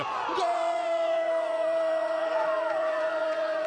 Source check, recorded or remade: remade